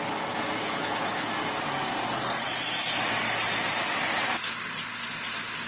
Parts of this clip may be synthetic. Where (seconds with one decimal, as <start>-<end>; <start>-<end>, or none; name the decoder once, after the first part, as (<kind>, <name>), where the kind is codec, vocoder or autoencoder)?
0.6-1.3 (codec, HILCodec)

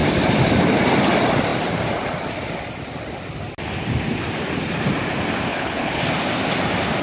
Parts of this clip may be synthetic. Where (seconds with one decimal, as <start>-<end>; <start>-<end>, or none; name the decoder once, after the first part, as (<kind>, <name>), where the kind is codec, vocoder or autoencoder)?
5.5-6.0 (codec, HILCodec)

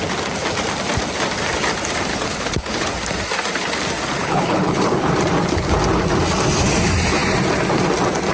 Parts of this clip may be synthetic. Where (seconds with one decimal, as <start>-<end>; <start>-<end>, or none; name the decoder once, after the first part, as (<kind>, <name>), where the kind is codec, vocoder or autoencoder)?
2.1-2.9 (codec, HILCodec); 4.2-5.1

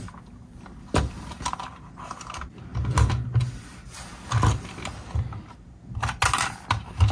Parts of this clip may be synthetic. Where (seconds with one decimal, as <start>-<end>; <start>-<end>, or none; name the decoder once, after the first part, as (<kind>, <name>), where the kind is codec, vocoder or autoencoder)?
none

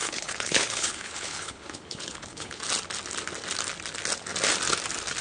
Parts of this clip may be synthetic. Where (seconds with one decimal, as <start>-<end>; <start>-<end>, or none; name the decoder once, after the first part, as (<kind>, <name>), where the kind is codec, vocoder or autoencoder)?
0.0-2.6 (codec, HILCodec)

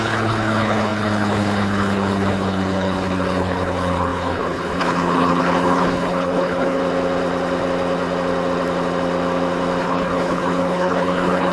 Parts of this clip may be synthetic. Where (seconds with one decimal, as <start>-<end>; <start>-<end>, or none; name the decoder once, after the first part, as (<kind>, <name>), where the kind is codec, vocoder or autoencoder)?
0.0-6.8 (codec, HILCodec); 9.8-11.5